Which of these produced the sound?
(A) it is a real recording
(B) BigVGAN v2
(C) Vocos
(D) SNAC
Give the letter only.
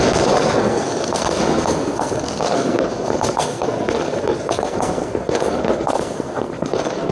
D